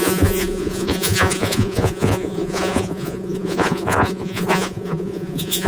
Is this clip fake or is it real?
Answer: fake